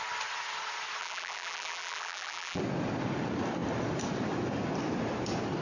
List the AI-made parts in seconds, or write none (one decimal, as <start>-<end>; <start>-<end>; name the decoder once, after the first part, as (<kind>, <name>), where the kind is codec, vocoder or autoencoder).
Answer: 1.0-2.6 (vocoder, BigVGAN v2)